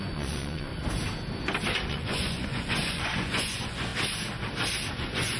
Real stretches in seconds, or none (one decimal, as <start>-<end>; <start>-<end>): 0.7-1.9; 3.9-4.9